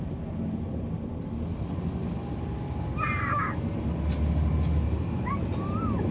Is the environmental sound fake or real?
real